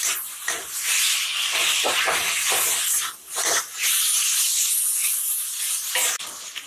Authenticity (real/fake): real